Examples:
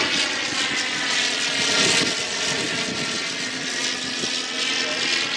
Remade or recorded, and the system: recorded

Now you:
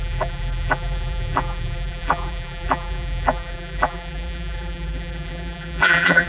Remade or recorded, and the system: remade, vocoder, BigVGAN v2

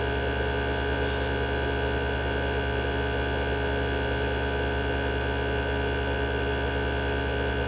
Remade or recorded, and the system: recorded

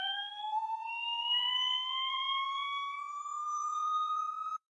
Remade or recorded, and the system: remade, vocoder, Vocos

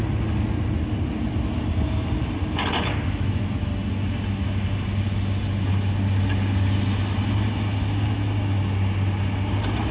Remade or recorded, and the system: recorded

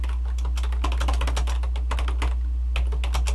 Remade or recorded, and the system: recorded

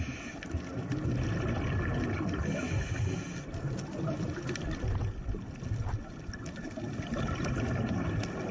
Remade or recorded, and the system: recorded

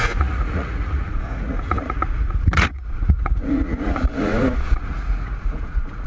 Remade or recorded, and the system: remade, vocoder, Vocos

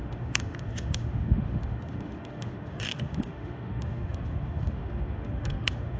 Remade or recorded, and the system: remade, autoencoder, DAC-VAE